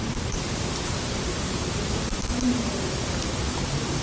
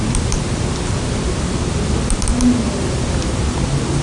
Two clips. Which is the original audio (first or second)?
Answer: second